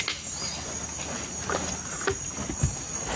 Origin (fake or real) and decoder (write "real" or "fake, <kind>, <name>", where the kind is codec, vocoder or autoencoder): real